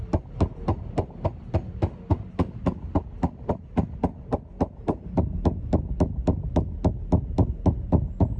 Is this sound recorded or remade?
recorded